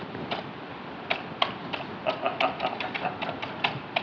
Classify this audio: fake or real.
fake